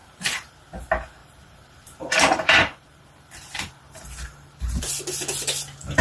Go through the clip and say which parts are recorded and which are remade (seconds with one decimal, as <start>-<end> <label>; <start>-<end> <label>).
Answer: 0.0-0.6 remade; 0.6-1.2 recorded; 1.2-4.8 remade; 4.8-6.0 recorded